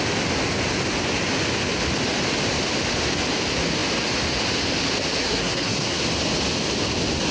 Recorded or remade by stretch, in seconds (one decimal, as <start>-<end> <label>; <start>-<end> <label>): 0.0-5.2 recorded; 5.2-6.0 remade; 6.0-7.3 recorded